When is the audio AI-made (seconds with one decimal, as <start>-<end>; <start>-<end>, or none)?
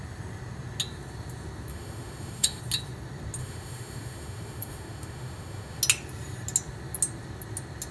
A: 1.7-2.6; 3.4-5.8